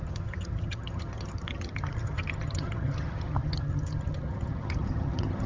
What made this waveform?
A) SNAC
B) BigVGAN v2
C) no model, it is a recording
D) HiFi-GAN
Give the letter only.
D